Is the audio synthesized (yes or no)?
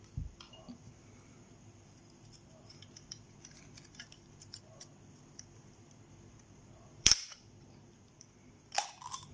yes